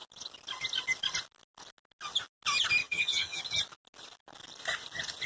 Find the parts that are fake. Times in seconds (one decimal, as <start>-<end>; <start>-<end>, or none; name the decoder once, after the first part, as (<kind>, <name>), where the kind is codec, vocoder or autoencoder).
2.8-3.4 (vocoder, HiFi-GAN)